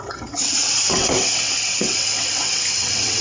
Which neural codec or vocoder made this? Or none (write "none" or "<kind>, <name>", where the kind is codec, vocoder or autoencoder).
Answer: vocoder, WaveNeXt